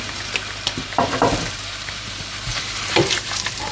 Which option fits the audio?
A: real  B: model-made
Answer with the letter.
B